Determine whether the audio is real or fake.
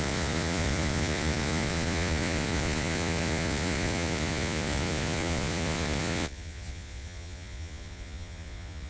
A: fake